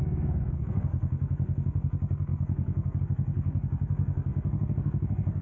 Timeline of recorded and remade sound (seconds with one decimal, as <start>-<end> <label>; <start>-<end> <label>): 0.0-5.4 remade